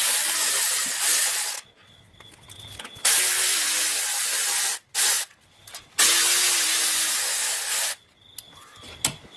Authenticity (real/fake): real